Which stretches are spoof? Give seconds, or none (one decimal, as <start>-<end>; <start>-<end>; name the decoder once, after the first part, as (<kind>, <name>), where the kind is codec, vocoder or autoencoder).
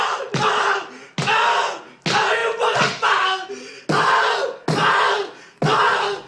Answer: none